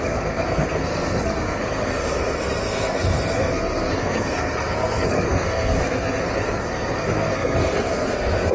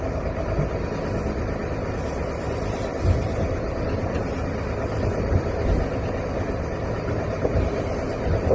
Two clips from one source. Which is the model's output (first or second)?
first